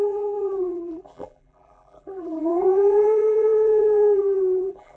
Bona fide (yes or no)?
no